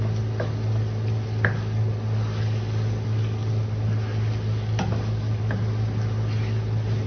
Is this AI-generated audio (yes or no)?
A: no